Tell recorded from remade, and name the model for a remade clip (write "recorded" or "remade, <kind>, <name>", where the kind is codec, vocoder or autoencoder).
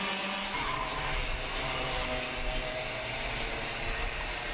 recorded